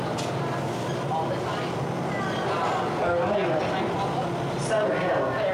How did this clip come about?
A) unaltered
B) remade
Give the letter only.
A